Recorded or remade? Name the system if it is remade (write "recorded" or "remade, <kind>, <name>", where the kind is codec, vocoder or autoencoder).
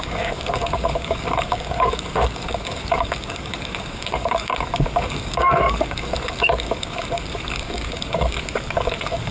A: remade, codec, DAC